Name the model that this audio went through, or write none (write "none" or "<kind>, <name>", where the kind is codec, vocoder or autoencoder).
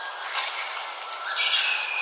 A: none